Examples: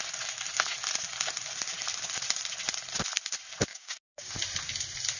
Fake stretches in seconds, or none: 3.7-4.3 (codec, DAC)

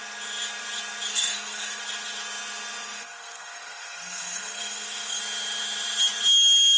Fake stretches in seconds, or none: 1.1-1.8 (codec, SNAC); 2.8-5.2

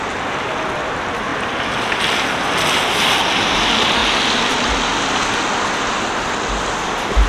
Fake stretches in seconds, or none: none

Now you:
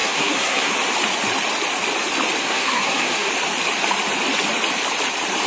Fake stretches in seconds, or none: 0.0-0.7 (codec, SNAC); 2.4-3.3

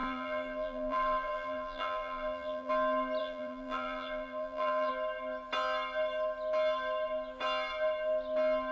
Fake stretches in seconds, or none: 0.0-2.7 (vocoder, BigVGAN v2); 3.2-4.9

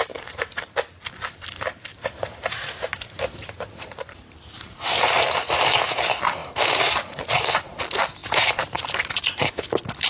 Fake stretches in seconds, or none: 1.9-5.5 (vocoder, BigVGAN v2); 6.4-7.7; 8.2-9.5